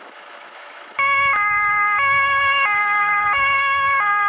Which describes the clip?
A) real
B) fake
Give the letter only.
B